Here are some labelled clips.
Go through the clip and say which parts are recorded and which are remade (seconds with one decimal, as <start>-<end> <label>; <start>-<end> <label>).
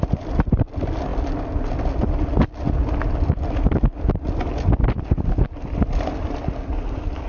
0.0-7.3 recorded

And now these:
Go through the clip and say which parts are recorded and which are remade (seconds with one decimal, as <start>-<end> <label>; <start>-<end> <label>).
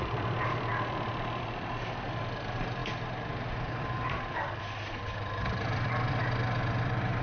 0.0-0.7 remade; 0.7-1.4 recorded; 1.4-2.8 remade; 2.8-3.8 recorded; 3.8-6.2 remade; 6.2-6.8 recorded; 6.8-7.2 remade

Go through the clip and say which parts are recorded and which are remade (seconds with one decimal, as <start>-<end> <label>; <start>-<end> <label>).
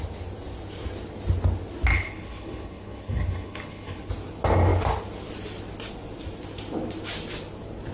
0.0-1.9 recorded; 1.9-4.1 remade; 4.1-7.9 recorded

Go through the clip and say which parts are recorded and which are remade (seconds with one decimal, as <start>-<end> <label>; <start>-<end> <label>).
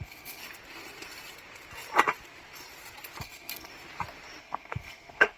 0.0-0.4 remade; 0.4-3.2 recorded; 3.2-3.7 remade; 3.7-4.4 recorded; 4.4-5.4 remade